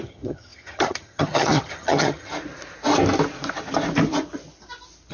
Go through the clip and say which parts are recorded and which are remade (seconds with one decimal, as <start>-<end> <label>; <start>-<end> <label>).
0.0-2.3 remade; 2.3-5.1 recorded

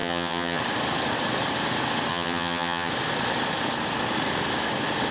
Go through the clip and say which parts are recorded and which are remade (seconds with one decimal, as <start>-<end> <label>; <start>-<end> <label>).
0.0-0.6 remade; 0.6-2.1 recorded; 2.1-2.9 remade; 2.9-5.1 recorded